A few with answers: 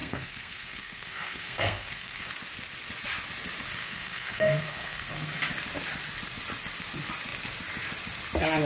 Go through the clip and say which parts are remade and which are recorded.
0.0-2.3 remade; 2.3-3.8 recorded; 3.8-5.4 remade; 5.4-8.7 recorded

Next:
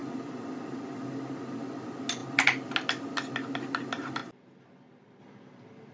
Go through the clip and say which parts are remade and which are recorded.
0.0-5.9 recorded

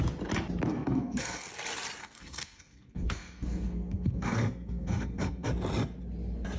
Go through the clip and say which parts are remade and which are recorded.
0.0-0.7 recorded; 0.7-1.5 remade; 1.5-2.0 recorded; 2.0-5.5 remade; 5.5-6.6 recorded

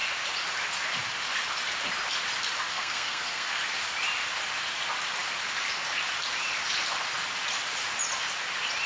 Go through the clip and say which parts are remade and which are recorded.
0.0-2.7 recorded; 2.7-3.6 remade; 3.6-8.9 recorded

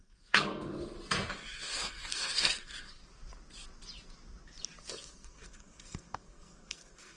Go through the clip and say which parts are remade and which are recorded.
0.0-0.7 remade; 0.7-1.3 recorded; 1.3-3.0 remade; 3.0-4.9 recorded; 4.9-7.2 remade

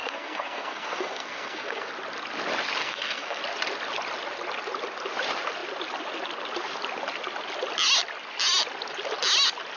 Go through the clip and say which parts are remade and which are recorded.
0.0-1.9 remade; 1.9-2.8 recorded; 2.8-3.4 remade; 3.4-9.8 recorded

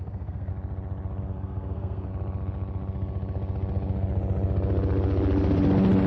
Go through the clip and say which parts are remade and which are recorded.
0.0-0.5 remade; 0.5-1.2 recorded; 1.2-2.1 remade; 2.1-6.1 recorded

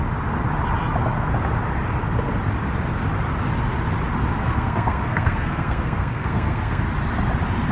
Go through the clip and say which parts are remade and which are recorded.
0.0-4.4 recorded; 4.4-6.8 remade; 6.8-7.7 recorded